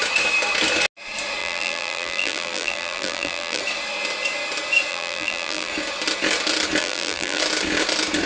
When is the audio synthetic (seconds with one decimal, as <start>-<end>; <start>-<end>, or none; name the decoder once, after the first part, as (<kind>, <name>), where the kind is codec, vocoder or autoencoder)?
1.4-3.6 (vocoder, BigVGAN v2); 4.9-5.7; 6.8-7.4